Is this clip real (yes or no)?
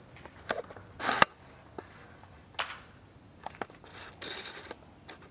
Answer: yes